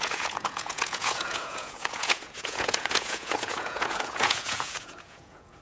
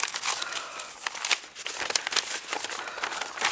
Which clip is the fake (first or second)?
first